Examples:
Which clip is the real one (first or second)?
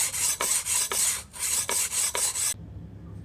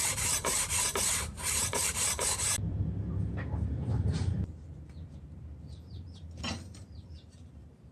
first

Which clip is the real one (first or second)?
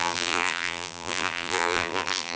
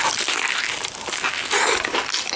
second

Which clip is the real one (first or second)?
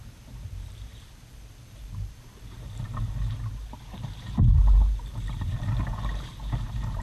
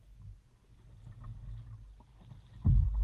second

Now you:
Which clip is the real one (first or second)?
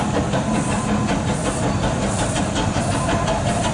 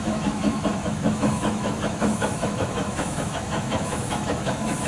first